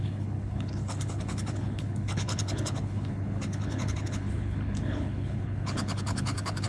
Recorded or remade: remade